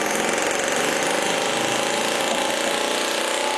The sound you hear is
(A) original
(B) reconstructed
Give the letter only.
B